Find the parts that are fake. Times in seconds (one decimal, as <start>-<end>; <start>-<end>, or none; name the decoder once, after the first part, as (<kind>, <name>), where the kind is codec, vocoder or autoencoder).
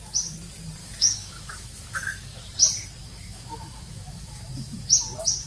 0.8-2.4 (autoencoder, DAC-VAE); 3.0-4.9